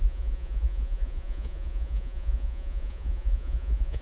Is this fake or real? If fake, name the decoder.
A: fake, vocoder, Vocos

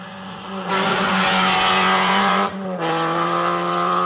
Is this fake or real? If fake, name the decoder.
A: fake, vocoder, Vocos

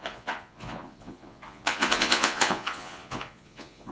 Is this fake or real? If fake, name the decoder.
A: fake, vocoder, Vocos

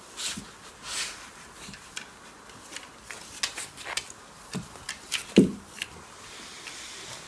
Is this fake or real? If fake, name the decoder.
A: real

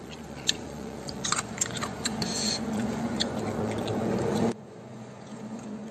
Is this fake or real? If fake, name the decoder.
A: fake, vocoder, Vocos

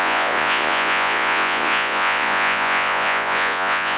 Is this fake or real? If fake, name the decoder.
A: fake, vocoder, Vocos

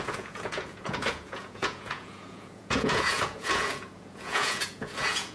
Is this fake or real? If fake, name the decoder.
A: fake, vocoder, Vocos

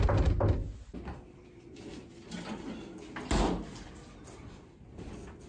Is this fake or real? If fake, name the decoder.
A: real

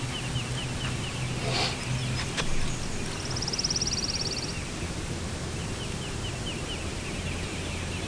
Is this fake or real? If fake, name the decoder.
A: real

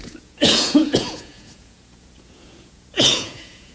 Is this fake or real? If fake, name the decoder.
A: fake, vocoder, Vocos